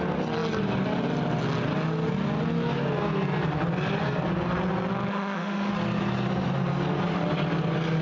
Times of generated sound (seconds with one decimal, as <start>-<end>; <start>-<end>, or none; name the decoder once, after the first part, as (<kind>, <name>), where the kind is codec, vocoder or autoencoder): 5.1-5.7 (autoencoder, DAC-VAE)